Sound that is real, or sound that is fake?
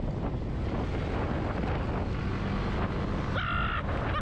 real